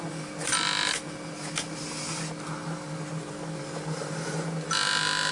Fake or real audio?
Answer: real